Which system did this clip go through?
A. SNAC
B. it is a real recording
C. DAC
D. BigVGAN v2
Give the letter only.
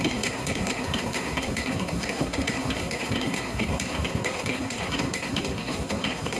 A